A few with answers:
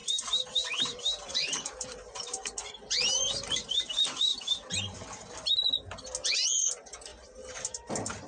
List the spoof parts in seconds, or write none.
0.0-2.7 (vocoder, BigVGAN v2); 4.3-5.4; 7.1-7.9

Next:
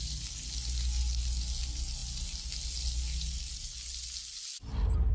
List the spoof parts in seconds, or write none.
none